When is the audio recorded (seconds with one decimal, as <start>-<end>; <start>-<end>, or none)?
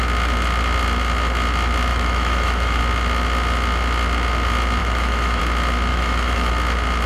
0.0-1.9; 2.8-4.8; 5.4-5.9; 6.5-7.1